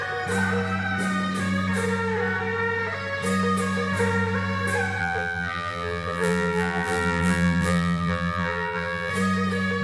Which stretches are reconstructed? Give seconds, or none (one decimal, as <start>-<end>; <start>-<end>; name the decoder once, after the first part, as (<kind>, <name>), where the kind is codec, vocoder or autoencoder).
5.0-9.1 (vocoder, BigVGAN v2)

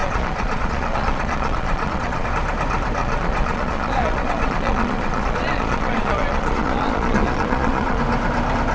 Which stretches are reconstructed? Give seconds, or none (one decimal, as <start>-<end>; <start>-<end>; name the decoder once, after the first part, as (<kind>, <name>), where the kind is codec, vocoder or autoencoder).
0.0-2.3 (vocoder, Vocos); 3.0-8.0